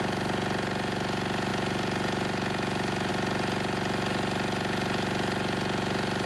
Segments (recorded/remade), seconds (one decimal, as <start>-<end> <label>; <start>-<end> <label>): 0.0-6.3 recorded